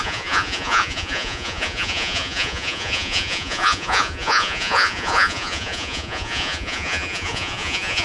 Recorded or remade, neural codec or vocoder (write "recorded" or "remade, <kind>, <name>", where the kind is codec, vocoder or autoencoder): remade, vocoder, Vocos